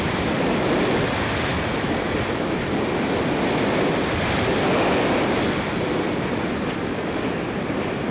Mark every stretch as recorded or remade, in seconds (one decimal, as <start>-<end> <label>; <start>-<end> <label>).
0.0-8.1 recorded